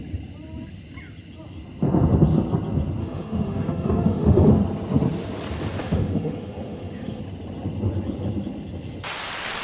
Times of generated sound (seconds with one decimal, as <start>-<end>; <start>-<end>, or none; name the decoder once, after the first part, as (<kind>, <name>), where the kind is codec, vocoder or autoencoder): 3.0-4.5 (autoencoder, DAC-VAE); 5.8-7.2